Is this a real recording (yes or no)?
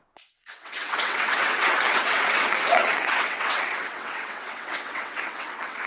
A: no